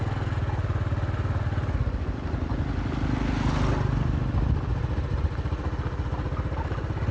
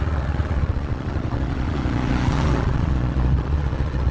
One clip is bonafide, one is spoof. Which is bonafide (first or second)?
first